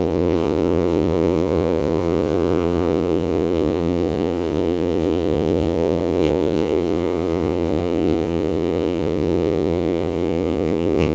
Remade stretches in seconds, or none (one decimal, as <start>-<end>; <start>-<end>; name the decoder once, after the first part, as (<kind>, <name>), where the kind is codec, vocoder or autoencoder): 0.0-11.1 (vocoder, Vocos)